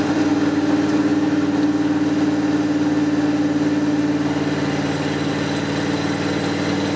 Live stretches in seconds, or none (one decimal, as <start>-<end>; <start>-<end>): 0.0-7.0